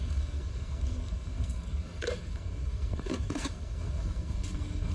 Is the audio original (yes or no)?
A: no